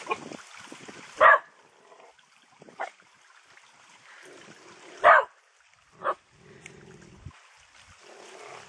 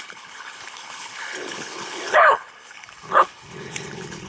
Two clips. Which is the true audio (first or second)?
first